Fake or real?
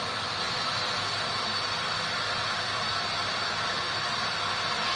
real